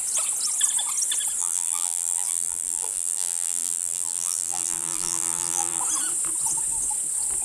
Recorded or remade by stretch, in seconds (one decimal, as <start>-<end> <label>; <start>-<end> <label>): 0.0-1.4 recorded; 1.4-5.8 remade; 5.8-7.4 recorded